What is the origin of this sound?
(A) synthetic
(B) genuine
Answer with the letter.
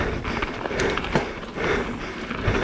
B